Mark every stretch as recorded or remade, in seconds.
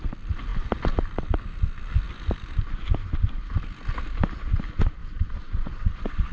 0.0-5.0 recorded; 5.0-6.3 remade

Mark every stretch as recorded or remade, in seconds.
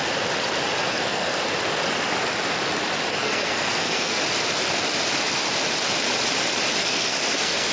0.0-0.8 recorded; 0.8-1.4 remade; 1.4-3.1 recorded; 3.1-4.2 remade; 4.2-6.8 recorded; 6.8-7.7 remade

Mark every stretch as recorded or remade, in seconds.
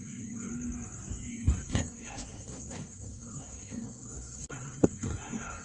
0.0-0.5 remade; 0.5-1.3 recorded; 1.3-5.6 remade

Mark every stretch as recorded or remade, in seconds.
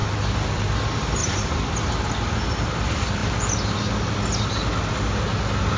0.0-1.2 recorded; 1.2-1.7 remade; 1.7-5.8 recorded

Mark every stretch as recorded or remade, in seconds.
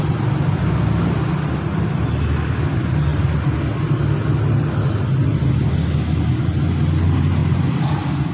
0.0-8.3 recorded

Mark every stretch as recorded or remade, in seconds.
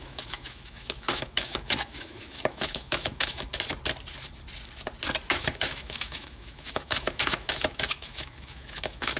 0.0-3.5 remade; 3.5-5.3 recorded; 5.3-9.2 remade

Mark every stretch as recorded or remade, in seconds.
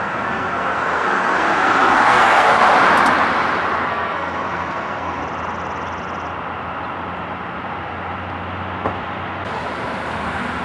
0.0-2.6 remade; 2.6-3.9 recorded; 3.9-5.2 remade; 5.2-10.6 recorded